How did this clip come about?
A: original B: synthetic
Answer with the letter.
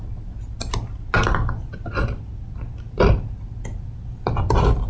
A